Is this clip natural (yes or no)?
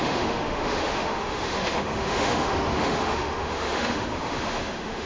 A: no